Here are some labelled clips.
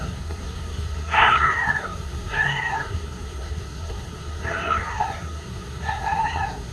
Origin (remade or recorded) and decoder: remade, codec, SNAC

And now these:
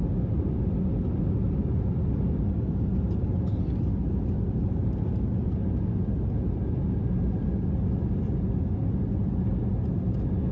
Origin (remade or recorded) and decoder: recorded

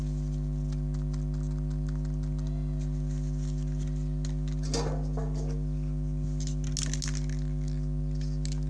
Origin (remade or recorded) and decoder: recorded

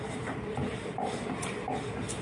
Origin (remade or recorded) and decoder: remade, vocoder, BigVGAN v2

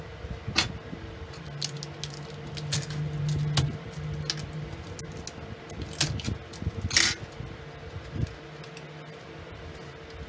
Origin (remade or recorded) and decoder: recorded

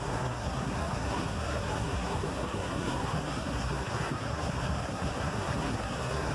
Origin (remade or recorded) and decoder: remade, codec, SNAC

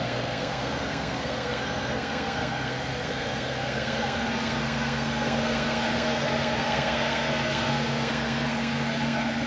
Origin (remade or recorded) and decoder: remade, codec, SNAC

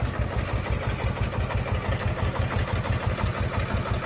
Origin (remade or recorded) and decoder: recorded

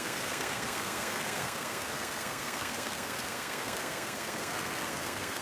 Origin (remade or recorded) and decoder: remade, codec, SNAC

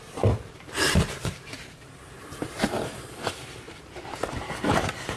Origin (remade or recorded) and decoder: remade, vocoder, BigVGAN v2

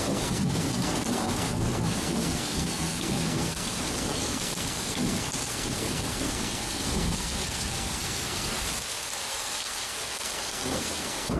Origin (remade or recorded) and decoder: remade, codec, SNAC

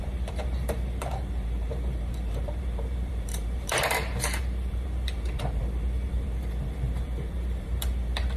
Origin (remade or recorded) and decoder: remade, vocoder, BigVGAN v2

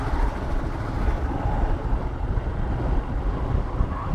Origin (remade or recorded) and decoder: recorded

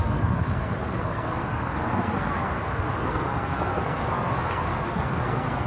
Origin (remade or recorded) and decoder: remade, codec, SNAC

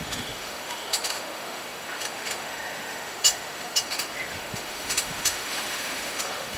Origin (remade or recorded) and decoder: remade, autoencoder, DAC-VAE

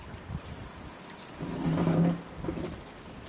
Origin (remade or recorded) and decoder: recorded